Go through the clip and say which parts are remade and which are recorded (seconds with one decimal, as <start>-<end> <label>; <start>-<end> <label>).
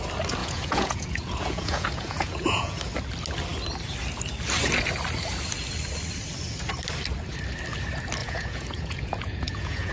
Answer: 0.0-0.4 recorded; 0.4-2.8 remade; 2.8-8.2 recorded; 8.2-9.9 remade